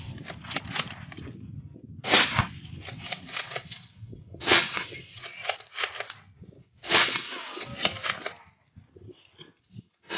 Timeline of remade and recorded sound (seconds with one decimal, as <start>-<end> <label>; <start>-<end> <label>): 0.0-2.9 recorded; 2.9-5.4 remade; 5.4-6.6 recorded; 6.6-7.7 remade; 7.7-9.6 recorded; 9.6-10.2 remade